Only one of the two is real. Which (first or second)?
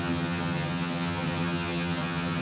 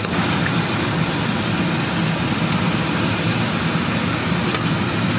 second